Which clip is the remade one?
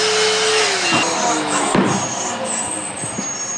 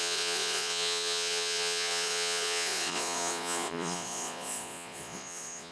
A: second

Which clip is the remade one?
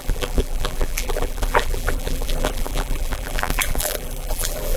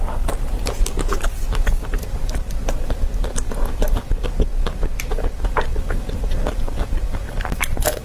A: first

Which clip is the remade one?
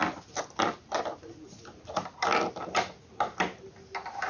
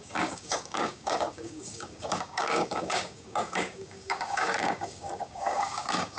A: second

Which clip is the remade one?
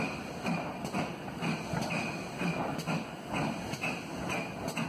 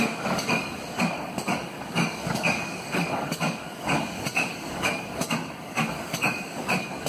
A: second